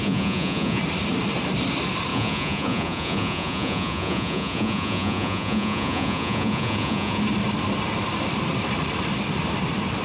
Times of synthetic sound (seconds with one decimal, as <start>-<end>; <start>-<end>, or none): 0.0-0.8; 2.1-7.2